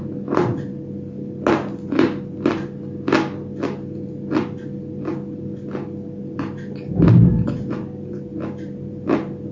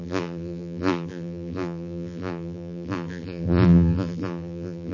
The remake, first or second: second